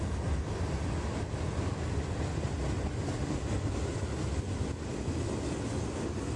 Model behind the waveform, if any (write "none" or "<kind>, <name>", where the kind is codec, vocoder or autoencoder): none